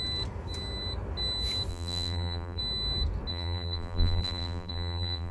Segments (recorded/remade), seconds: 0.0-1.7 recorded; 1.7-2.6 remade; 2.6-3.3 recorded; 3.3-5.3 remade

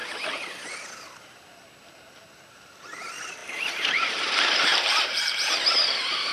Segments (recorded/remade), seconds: 0.0-2.5 recorded; 2.5-6.3 remade

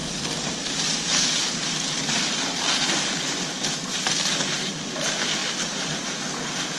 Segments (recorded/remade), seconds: 0.0-2.5 recorded; 2.5-4.7 remade; 4.7-5.4 recorded; 5.4-6.0 remade; 6.0-6.8 recorded

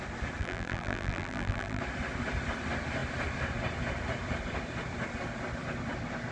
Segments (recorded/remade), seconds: 0.0-0.4 recorded; 0.4-1.8 remade; 1.8-6.3 recorded

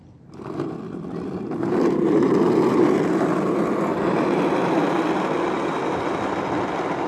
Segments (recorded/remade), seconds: 0.0-7.1 recorded

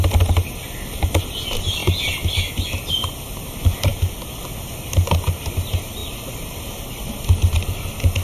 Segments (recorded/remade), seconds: 0.0-3.9 recorded; 3.9-4.4 remade; 4.4-6.0 recorded; 6.0-6.9 remade; 6.9-8.2 recorded

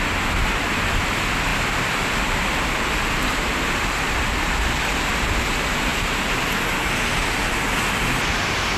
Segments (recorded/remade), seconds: 0.0-1.5 recorded; 1.5-5.1 remade; 5.1-8.8 recorded

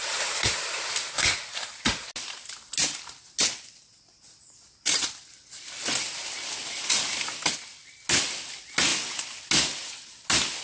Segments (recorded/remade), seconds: 0.0-1.4 remade; 1.4-10.6 recorded